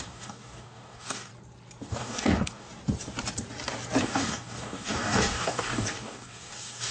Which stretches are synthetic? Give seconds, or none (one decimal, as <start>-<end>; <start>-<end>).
0.0-1.3; 1.9-2.7; 4.0-6.9